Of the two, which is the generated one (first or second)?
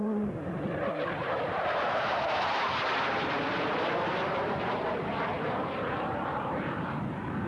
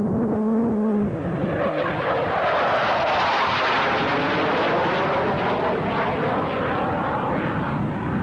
first